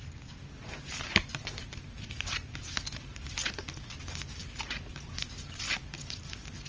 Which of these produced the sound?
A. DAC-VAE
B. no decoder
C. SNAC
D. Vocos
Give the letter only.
B